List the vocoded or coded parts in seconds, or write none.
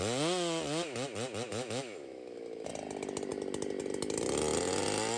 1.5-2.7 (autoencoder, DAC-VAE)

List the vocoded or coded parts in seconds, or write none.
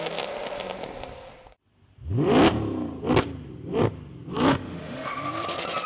4.5-5.2 (autoencoder, DAC-VAE)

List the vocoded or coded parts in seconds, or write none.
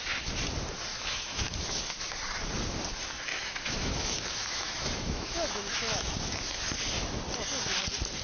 0.9-2.1 (autoencoder, DAC-VAE); 3.3-6.6